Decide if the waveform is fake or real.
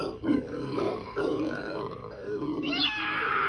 fake